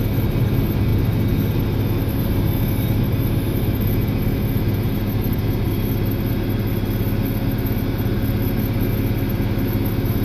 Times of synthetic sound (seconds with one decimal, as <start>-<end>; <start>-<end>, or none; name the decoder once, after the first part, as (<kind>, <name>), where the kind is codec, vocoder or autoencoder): none